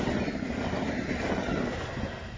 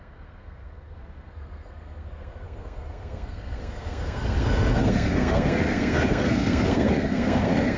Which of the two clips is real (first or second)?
first